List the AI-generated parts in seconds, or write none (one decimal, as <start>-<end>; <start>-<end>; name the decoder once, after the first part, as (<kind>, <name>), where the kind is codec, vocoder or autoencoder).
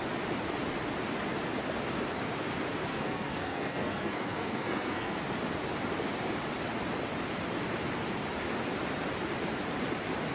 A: 2.9-5.2 (codec, SNAC)